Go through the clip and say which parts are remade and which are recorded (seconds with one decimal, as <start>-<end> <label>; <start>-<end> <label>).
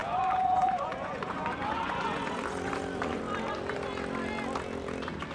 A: 0.0-3.2 remade; 3.2-5.3 recorded